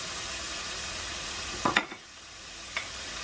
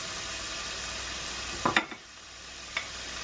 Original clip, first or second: second